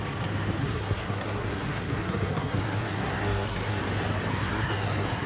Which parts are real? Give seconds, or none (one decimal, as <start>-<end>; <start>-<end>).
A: 0.0-0.6; 3.8-4.3